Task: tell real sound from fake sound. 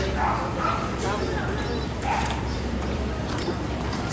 fake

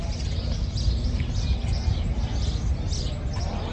real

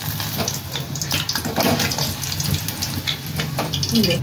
real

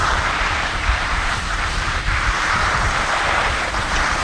fake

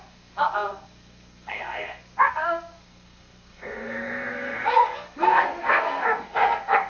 fake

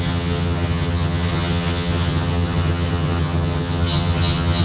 fake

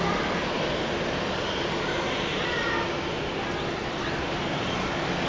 real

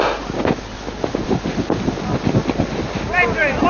real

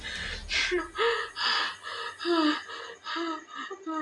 real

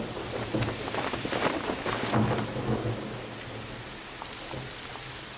real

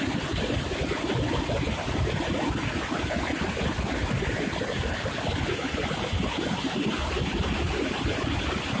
real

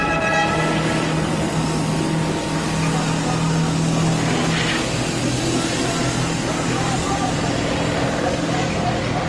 real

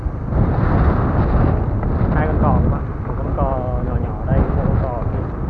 real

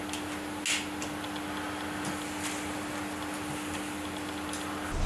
real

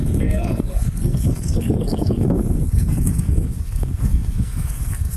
fake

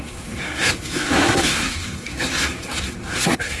fake